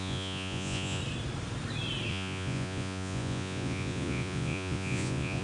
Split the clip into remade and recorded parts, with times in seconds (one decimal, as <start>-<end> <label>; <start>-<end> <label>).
0.0-1.0 remade; 1.0-2.1 recorded; 2.1-5.4 remade